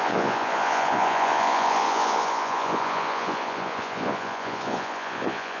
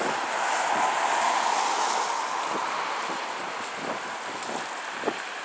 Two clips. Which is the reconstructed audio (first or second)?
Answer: first